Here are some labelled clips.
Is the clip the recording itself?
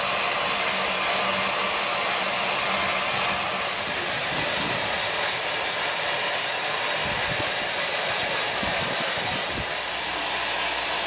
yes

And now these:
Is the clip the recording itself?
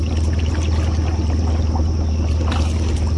yes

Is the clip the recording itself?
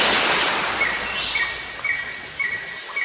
yes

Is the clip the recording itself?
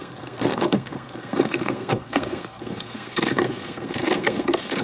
no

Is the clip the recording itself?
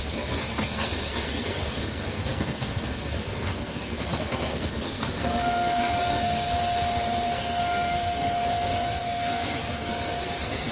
no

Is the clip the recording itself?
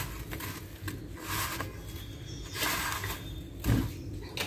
yes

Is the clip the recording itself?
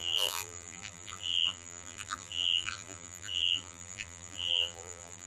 no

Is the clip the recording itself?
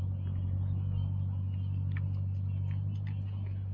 yes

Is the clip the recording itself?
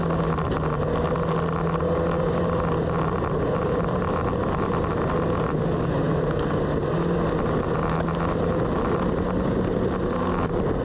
yes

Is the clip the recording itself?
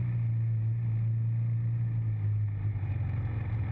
yes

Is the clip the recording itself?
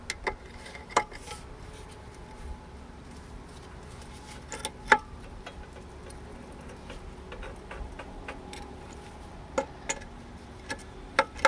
yes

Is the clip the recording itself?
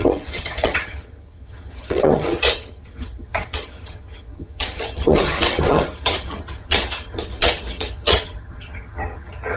no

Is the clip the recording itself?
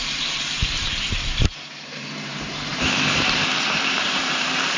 no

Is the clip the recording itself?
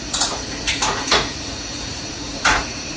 no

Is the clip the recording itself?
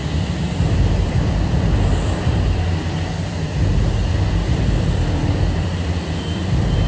no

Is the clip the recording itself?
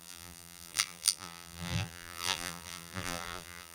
no